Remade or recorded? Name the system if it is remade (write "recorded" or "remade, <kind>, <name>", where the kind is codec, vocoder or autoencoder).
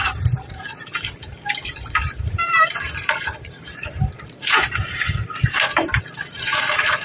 remade, vocoder, BigVGAN v2